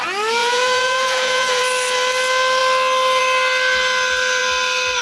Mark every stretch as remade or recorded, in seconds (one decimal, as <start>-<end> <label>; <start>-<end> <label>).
0.0-0.4 recorded; 0.4-1.6 remade; 1.6-5.0 recorded